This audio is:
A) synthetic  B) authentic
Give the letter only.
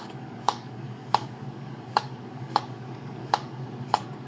A